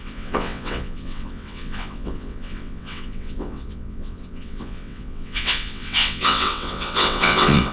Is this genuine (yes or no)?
no